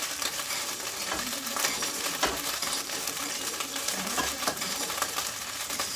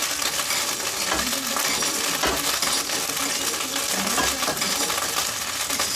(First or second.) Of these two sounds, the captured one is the second